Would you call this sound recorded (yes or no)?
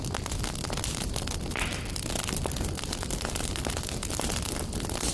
yes